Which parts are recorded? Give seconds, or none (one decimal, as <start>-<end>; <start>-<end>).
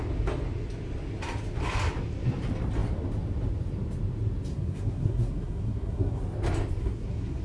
0.0-4.5; 6.2-6.8